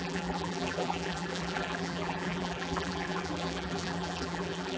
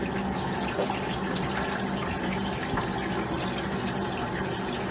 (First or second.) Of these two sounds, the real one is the second